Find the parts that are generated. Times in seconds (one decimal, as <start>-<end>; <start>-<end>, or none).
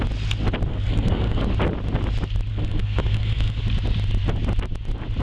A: 0.7-1.4; 2.5-3.6